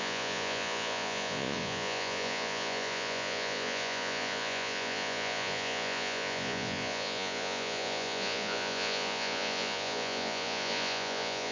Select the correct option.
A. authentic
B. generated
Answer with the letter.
B